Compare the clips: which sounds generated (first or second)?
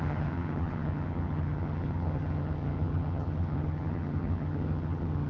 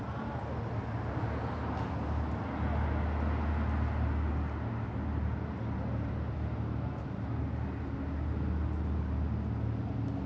first